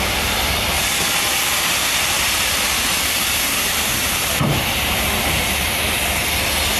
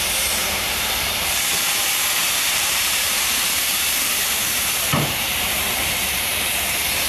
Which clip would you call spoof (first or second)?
second